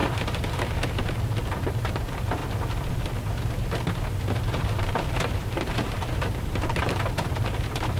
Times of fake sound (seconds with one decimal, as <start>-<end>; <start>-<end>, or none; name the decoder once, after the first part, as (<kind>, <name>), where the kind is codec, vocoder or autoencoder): 0.0-2.4 (vocoder, BigVGAN v2); 4.3-8.0